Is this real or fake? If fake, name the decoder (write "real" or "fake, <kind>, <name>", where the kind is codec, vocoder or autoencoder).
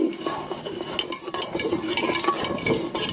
real